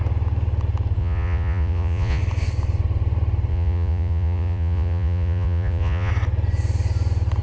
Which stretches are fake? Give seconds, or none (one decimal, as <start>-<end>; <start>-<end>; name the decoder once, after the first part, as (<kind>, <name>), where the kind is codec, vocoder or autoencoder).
1.0-2.2 (vocoder, Vocos); 3.5-6.1

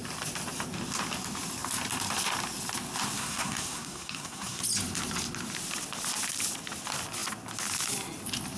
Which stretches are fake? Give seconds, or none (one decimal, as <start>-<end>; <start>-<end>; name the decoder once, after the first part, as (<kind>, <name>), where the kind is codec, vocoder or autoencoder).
3.2-4.6 (codec, SNAC)

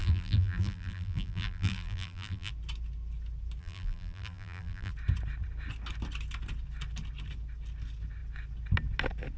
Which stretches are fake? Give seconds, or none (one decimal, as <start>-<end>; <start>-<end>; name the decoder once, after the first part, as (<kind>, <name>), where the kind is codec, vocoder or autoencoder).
0.0-2.5 (vocoder, BigVGAN v2); 3.6-4.9

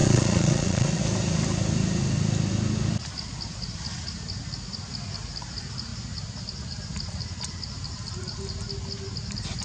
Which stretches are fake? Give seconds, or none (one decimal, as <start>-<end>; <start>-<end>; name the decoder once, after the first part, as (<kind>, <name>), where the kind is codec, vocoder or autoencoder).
0.0-1.0 (vocoder, Vocos)

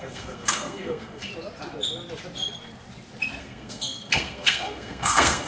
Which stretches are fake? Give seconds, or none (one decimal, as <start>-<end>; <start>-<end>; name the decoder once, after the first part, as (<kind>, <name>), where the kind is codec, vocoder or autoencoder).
0.0-1.3 (codec, SNAC); 3.4-5.5

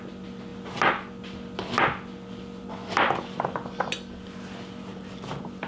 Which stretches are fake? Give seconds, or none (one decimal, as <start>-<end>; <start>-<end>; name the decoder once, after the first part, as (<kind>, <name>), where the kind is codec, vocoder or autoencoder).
none

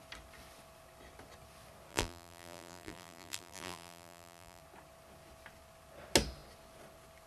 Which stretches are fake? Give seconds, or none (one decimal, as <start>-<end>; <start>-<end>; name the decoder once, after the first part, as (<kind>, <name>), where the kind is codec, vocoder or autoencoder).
1.9-4.6 (vocoder, BigVGAN v2)